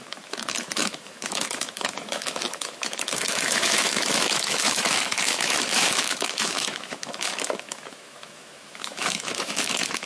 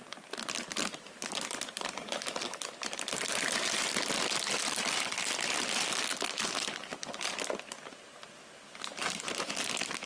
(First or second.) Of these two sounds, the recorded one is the second